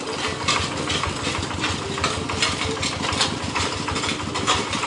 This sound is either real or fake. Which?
real